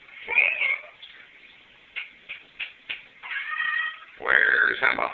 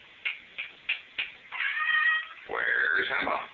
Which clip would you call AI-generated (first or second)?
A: first